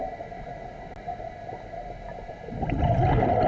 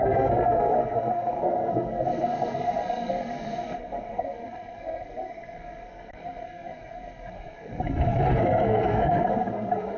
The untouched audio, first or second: first